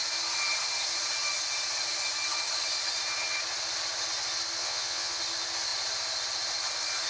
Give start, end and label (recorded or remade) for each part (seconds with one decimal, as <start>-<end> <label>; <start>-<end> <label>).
0.0-4.6 recorded; 4.6-5.2 remade; 5.2-7.1 recorded